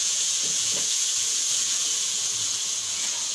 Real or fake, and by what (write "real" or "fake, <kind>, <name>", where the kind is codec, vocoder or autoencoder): fake, vocoder, Vocos